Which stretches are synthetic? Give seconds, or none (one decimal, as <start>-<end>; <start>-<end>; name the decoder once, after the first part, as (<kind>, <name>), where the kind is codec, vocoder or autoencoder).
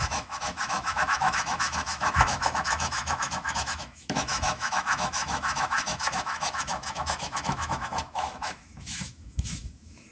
0.0-10.1 (autoencoder, DAC-VAE)